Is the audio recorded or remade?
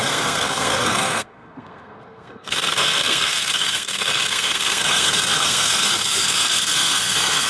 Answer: remade